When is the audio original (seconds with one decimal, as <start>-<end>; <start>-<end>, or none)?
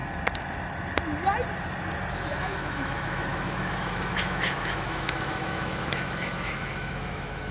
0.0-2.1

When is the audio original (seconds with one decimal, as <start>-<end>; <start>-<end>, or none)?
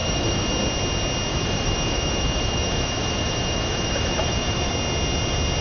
0.5-1.3; 4.7-5.6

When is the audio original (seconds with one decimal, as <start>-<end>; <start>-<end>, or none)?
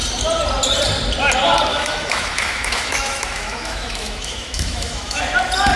0.0-1.7; 5.2-5.8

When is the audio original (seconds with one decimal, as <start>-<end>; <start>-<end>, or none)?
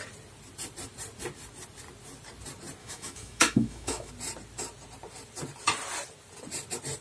0.0-2.8; 4.1-7.0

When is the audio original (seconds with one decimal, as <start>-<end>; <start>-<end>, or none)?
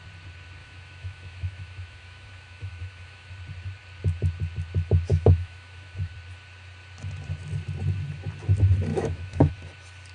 0.0-0.6; 3.3-5.1; 6.1-8.9; 9.5-10.1